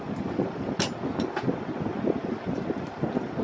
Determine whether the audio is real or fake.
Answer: real